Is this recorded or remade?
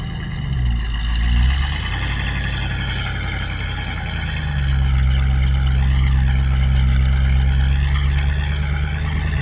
recorded